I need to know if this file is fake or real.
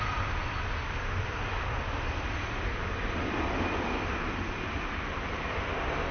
real